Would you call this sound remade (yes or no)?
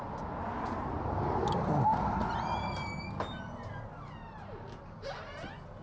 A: no